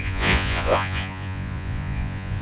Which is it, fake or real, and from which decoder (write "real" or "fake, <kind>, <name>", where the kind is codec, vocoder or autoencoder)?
fake, vocoder, Vocos